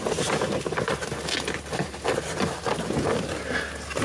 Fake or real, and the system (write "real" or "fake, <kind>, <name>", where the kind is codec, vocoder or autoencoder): real